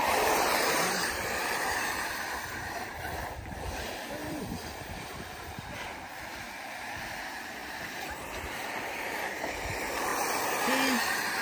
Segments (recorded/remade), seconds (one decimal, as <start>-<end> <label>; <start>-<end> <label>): 0.0-10.1 remade; 10.1-11.4 recorded